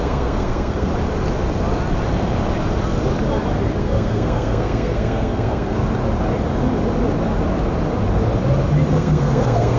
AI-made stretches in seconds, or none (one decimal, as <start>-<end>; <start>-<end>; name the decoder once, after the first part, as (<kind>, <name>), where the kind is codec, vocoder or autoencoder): 0.0-0.9 (codec, SNAC); 3.8-5.8; 8.9-9.8